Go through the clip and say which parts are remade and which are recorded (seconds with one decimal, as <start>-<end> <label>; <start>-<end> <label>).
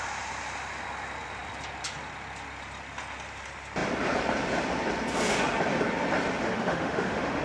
0.0-6.4 recorded; 6.4-7.4 remade